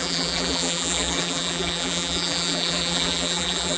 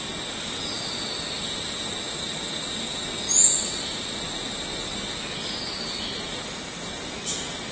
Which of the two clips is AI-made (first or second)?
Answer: first